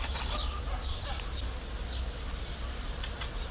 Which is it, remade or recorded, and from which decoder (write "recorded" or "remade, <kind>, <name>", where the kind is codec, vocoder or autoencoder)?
recorded